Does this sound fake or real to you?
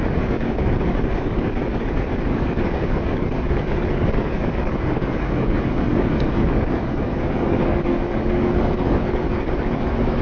fake